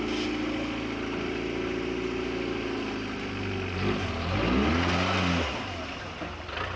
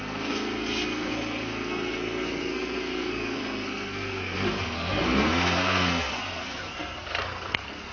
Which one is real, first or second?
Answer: first